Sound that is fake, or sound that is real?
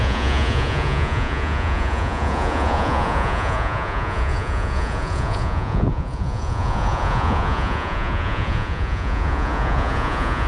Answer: fake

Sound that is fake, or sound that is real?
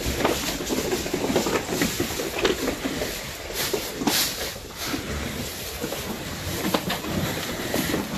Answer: fake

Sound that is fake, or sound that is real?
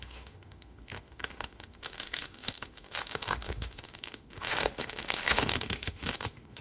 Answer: fake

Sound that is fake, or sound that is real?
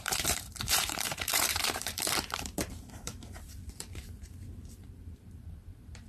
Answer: fake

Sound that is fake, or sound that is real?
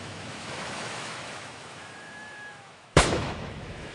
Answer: fake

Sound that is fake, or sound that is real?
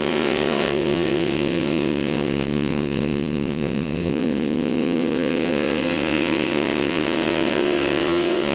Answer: fake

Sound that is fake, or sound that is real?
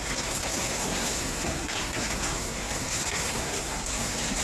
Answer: fake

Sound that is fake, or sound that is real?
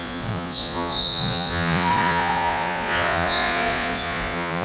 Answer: fake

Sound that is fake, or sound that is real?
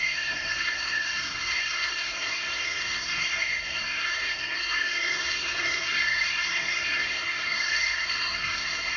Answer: fake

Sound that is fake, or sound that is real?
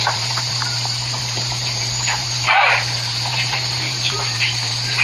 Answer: fake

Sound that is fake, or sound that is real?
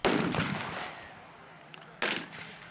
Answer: real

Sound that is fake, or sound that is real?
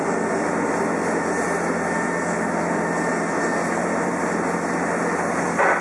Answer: real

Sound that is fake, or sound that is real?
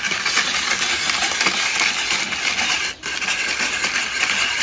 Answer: real